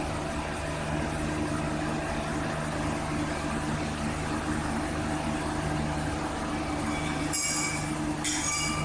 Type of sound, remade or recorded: recorded